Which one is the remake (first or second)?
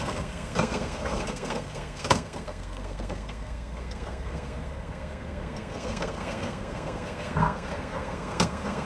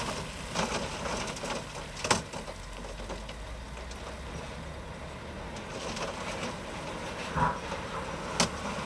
first